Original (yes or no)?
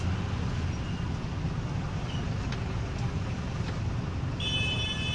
yes